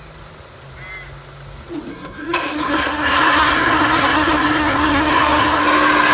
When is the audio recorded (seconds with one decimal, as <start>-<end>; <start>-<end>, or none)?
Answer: 0.0-1.9; 5.6-6.1